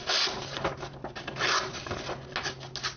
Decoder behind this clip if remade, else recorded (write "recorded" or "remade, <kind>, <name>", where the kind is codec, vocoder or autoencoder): recorded